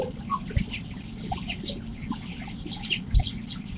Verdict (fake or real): fake